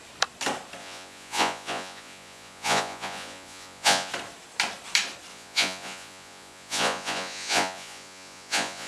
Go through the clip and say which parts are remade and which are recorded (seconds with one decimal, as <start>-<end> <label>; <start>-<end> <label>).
0.0-0.8 recorded; 0.8-4.1 remade; 4.1-5.3 recorded; 5.3-8.9 remade